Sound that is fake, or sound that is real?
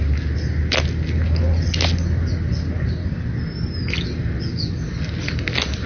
real